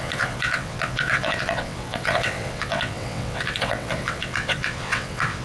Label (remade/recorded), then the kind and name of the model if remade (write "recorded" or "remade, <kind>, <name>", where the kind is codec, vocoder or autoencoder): remade, vocoder, WaveNeXt